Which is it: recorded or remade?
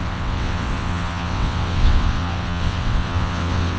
remade